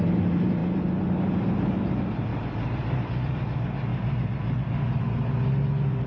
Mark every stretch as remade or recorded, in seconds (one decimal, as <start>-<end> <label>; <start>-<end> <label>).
0.0-6.1 recorded